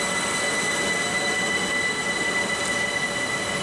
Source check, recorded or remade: recorded